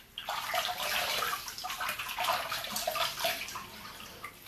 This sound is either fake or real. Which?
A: real